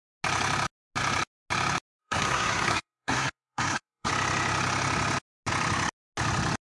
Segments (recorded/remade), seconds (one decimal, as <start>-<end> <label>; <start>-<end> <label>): 0.0-2.0 recorded; 2.0-4.1 remade; 4.1-6.8 recorded